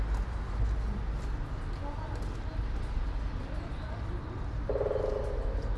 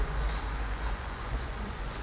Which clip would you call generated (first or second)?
second